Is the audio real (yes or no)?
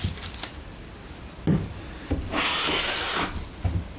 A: yes